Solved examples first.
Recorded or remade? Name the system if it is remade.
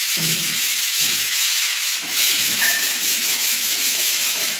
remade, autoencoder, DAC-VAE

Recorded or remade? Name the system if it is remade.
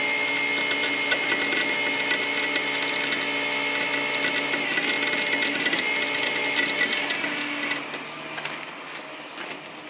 recorded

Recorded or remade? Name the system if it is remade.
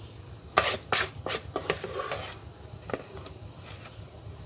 recorded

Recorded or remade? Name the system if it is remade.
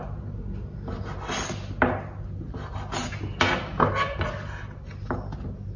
recorded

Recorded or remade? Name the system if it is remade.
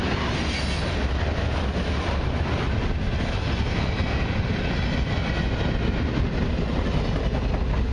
recorded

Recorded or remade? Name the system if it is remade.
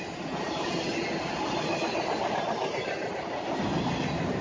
recorded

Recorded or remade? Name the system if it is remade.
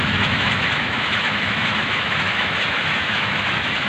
remade, autoencoder, DAC-VAE